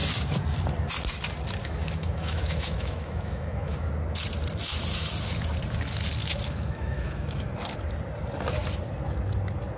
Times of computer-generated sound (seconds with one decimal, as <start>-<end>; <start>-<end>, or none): 1.6-3.9; 6.2-7.4

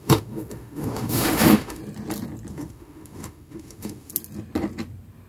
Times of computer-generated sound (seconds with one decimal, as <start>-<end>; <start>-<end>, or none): 0.0-1.8; 2.5-4.1

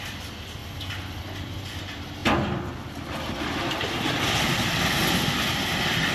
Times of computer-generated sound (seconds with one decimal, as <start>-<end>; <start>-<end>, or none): none

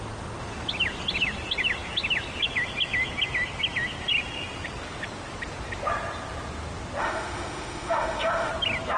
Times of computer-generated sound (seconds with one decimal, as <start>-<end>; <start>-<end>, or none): 7.0-8.5

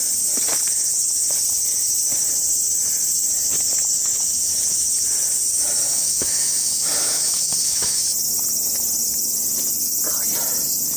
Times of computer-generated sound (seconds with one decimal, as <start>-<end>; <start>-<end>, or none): 5.9-8.0

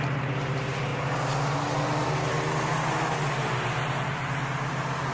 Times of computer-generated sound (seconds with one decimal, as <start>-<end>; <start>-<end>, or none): 3.4-4.2

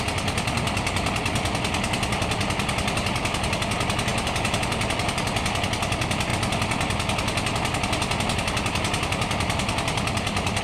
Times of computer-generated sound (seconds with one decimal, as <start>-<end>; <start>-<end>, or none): none